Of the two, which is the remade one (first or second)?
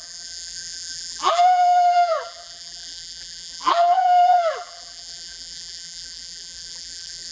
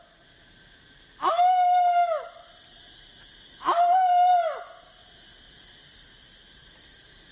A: first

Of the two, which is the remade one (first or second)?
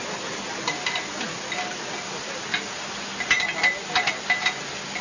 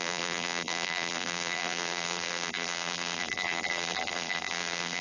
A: second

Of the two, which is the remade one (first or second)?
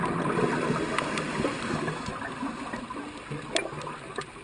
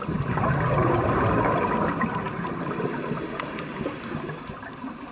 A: second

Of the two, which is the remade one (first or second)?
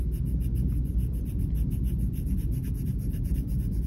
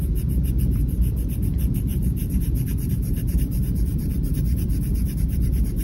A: second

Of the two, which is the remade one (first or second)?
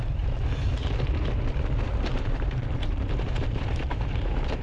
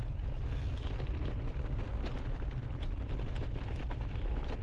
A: first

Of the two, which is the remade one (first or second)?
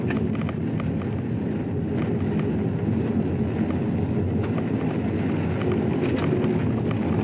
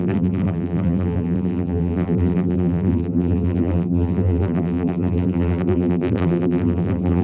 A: second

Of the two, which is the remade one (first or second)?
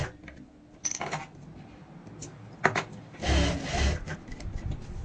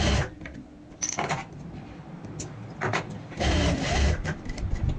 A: second